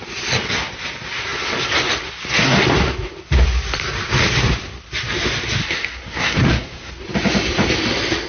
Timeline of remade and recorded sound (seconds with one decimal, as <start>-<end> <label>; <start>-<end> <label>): 0.0-5.6 recorded; 5.6-6.9 remade; 6.9-8.3 recorded